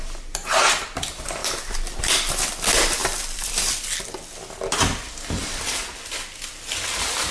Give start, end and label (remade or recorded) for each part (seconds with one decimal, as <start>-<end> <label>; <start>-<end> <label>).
0.0-1.4 recorded; 1.4-2.0 remade; 2.0-3.0 recorded; 3.0-3.7 remade; 3.7-5.4 recorded; 5.4-6.5 remade; 6.5-7.3 recorded